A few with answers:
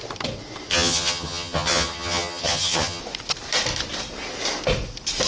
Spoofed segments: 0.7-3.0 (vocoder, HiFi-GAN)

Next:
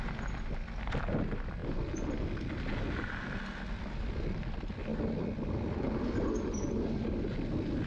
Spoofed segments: none

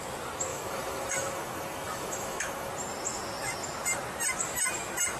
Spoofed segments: 0.5-2.7 (autoencoder, DAC-VAE)

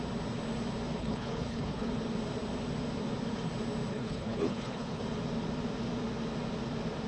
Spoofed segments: 1.0-1.9 (codec, HILCodec); 3.9-5.0

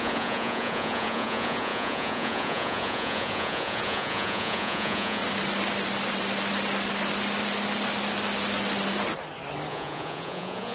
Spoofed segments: 0.0-5.2 (vocoder, Vocos); 9.7-10.7

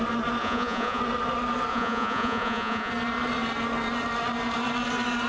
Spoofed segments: 0.4-1.0 (vocoder, Vocos); 1.7-2.9

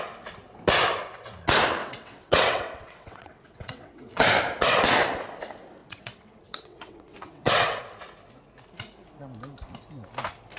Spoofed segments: 1.8-4.1 (vocoder, WaveNeXt); 5.8-7.8